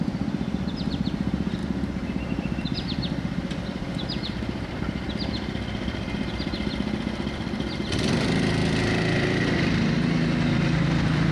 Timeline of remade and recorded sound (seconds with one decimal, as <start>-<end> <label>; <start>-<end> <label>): 0.0-1.6 remade; 1.6-2.3 recorded; 2.3-8.6 remade; 8.6-10.4 recorded; 10.4-11.3 remade